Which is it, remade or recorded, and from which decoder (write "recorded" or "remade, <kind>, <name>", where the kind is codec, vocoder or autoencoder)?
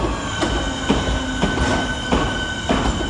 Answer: recorded